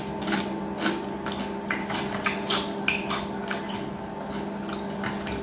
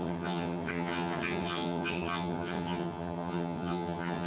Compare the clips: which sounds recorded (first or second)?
first